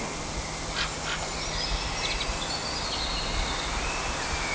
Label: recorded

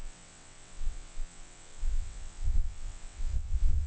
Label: remade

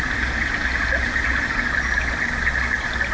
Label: recorded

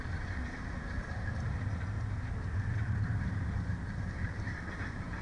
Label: remade